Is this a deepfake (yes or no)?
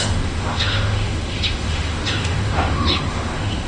yes